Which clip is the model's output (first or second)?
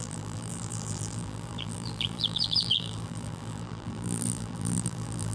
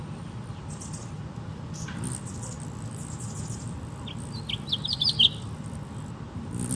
first